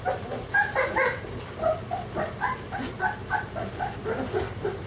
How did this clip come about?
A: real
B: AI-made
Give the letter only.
A